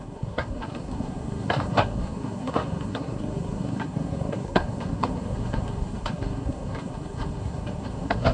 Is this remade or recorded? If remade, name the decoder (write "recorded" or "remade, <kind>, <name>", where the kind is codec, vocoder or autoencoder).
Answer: remade, codec, SNAC